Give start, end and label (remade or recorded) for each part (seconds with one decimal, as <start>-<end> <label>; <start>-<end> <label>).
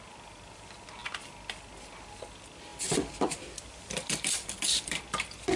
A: 0.0-2.7 recorded; 2.7-5.0 remade; 5.0-5.6 recorded